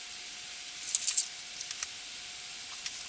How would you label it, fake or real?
real